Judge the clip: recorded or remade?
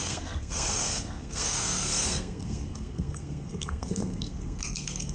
remade